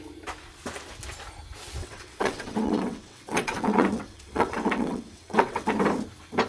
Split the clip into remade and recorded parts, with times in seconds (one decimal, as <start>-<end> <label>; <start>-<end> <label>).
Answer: 0.0-1.8 recorded; 1.8-5.7 remade; 5.7-6.5 recorded